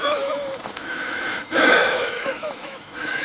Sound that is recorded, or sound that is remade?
remade